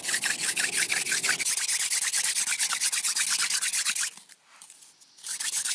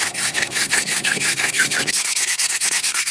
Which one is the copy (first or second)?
second